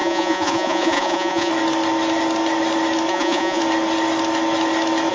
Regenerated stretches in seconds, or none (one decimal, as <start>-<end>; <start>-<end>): 0.0-1.5; 3.1-3.6

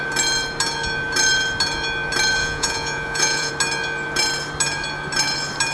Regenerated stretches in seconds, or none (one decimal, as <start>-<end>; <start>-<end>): 2.4-3.5

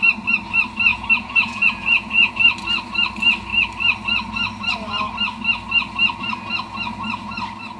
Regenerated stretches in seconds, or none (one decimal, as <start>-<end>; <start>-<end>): 0.9-2.3

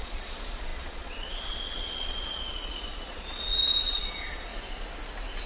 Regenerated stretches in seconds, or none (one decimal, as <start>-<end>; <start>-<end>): 0.0-4.5

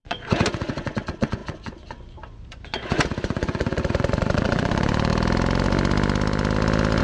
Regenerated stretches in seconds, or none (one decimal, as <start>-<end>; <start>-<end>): 0.0-5.1